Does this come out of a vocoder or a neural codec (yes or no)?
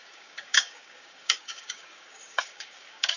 yes